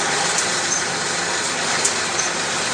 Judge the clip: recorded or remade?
recorded